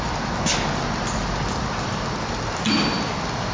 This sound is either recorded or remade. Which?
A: recorded